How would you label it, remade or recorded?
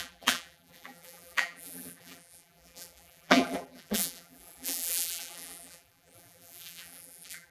remade